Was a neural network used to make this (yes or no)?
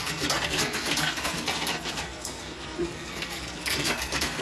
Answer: yes